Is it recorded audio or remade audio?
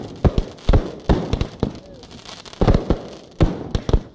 recorded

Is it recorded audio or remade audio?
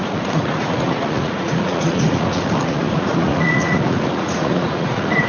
remade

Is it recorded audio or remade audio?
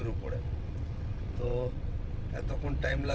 remade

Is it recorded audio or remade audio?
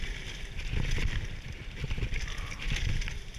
recorded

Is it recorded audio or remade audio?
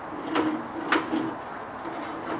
recorded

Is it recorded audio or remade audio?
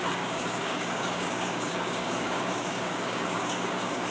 remade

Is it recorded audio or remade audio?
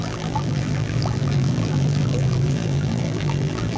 remade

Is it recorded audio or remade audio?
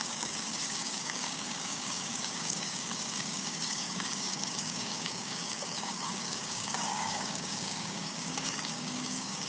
remade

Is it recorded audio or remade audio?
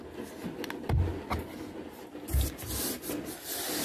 recorded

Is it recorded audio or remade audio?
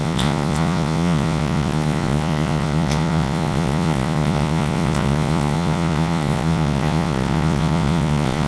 remade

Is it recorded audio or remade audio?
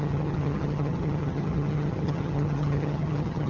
remade